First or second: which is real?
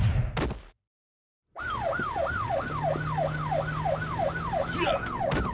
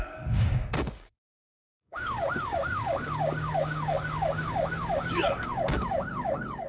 first